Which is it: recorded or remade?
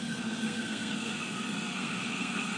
remade